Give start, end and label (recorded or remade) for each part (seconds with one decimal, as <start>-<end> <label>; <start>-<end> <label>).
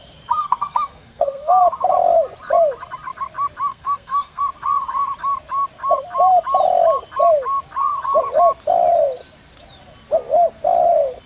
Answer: 0.0-0.4 recorded; 0.4-1.6 remade; 1.6-3.7 recorded; 3.7-4.4 remade; 4.4-11.3 recorded